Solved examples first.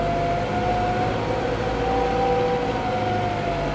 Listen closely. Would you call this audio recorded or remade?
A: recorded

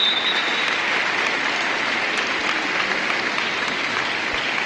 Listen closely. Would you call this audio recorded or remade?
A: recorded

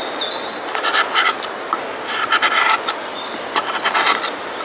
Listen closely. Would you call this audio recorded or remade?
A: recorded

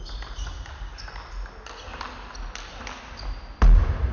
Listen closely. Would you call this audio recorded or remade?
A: recorded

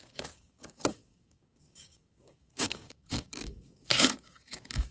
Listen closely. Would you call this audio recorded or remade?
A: remade